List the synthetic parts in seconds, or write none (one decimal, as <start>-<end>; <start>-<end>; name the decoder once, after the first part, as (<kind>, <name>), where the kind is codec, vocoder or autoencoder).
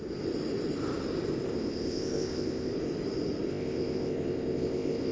1.5-2.7 (codec, ZipCodec); 3.5-5.1